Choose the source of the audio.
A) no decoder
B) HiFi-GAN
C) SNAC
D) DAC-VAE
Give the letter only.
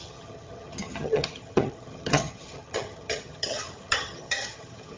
B